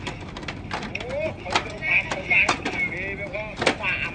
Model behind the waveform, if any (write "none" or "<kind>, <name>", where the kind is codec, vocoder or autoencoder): none